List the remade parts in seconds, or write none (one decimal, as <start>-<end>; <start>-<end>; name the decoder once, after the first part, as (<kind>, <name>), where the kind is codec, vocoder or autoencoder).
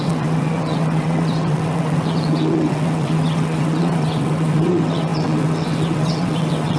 0.0-6.8 (vocoder, WaveNeXt)